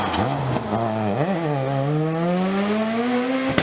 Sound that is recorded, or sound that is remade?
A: recorded